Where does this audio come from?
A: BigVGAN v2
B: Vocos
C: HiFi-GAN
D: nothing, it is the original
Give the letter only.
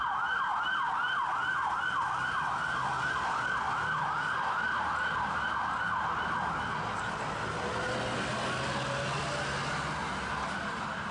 D